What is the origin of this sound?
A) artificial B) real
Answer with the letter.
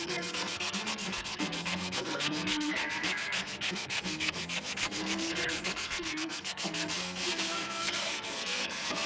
A